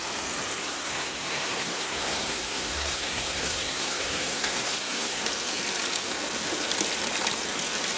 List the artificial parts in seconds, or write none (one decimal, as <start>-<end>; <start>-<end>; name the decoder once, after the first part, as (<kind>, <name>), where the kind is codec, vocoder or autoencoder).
0.6-5.2 (codec, SNAC)